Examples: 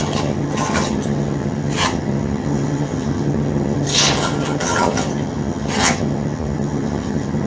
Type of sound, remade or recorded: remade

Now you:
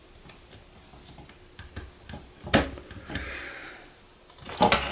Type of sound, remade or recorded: recorded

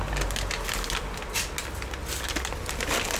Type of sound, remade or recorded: recorded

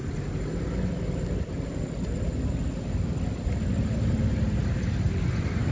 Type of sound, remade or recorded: recorded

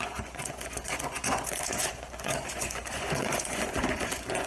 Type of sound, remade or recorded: remade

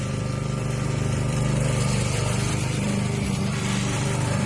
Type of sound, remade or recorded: remade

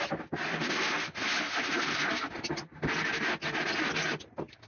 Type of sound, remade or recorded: recorded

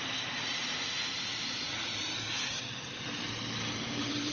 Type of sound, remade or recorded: remade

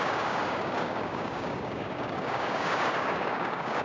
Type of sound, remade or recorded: remade